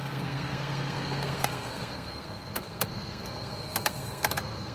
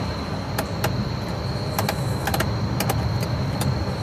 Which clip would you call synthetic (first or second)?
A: first